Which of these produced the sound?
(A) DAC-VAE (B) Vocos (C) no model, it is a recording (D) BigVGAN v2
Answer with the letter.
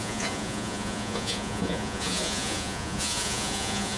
B